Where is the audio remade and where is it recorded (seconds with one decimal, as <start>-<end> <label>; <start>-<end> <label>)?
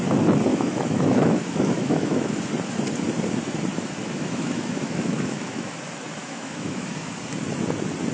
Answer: 0.0-0.5 recorded; 0.5-2.4 remade; 2.4-4.0 recorded; 4.0-5.8 remade; 5.8-6.2 recorded; 6.2-6.9 remade; 6.9-8.1 recorded